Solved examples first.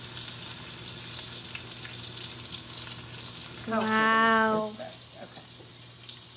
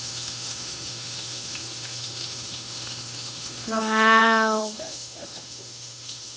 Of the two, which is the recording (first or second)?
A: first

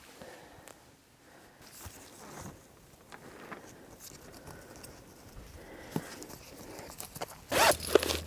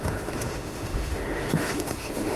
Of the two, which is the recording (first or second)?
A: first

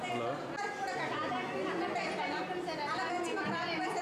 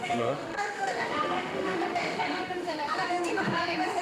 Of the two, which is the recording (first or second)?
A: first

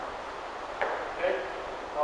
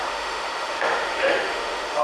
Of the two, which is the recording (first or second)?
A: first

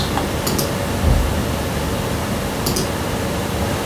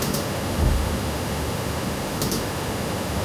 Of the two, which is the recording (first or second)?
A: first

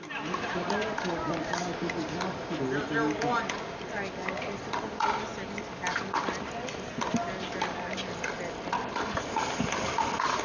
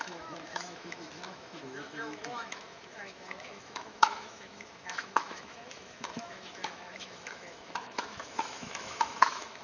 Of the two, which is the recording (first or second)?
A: first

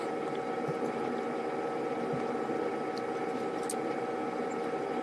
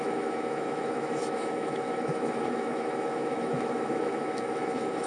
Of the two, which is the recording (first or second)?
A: first